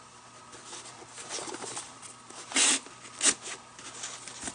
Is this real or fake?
real